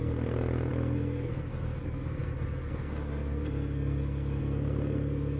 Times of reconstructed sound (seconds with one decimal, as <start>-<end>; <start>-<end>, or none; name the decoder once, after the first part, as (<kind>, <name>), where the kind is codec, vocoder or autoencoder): 0.0-5.4 (codec, SNAC)